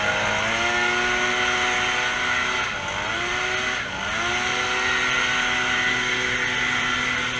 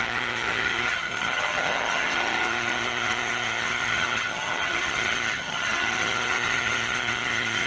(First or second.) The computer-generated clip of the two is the second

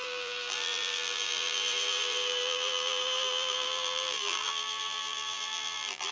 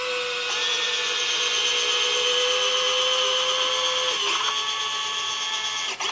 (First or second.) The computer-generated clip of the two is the first